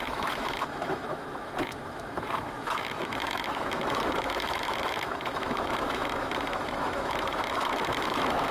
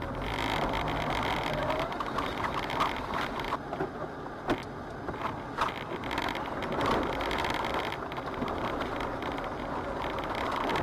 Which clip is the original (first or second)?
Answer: second